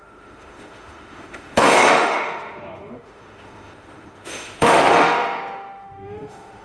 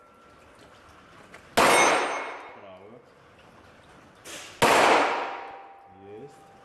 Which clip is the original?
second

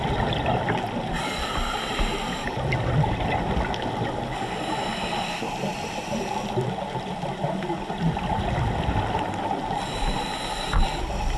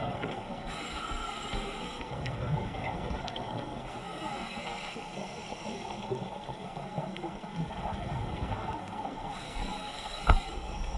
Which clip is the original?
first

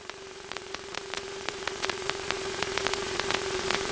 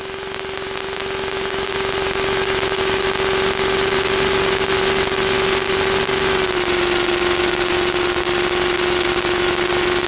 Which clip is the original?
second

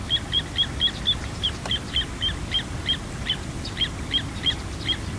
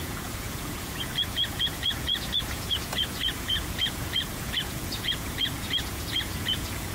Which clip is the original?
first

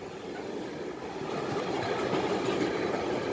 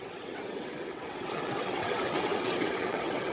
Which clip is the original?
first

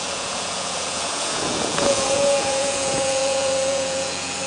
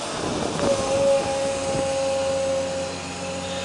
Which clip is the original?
second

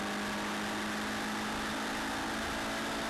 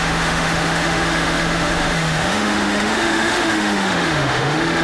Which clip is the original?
first